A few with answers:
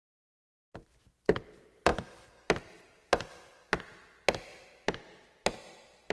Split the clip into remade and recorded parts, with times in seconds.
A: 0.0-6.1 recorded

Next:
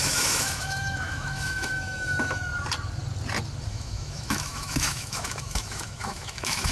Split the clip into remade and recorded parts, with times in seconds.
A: 0.0-2.5 remade; 2.5-3.7 recorded; 3.7-6.7 remade